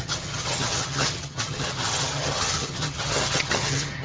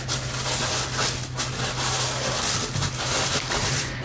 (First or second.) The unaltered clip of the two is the second